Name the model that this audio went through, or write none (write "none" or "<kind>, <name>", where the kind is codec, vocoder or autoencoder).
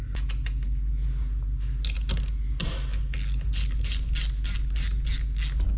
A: none